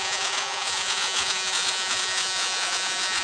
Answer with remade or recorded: remade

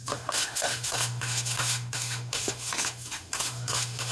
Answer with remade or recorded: remade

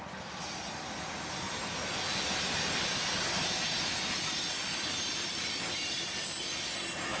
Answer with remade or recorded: recorded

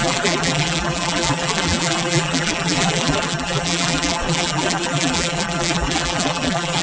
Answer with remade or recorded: remade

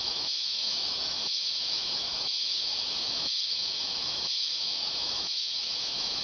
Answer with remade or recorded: remade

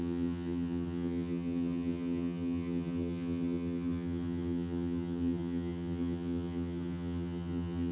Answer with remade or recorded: remade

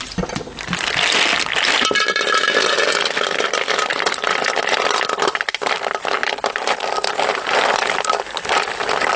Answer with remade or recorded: recorded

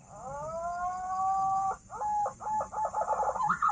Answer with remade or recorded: recorded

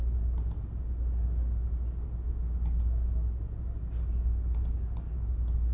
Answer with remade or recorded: recorded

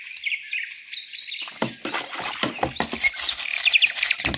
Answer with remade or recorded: recorded